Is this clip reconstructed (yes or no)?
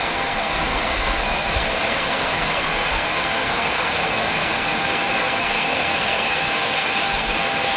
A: yes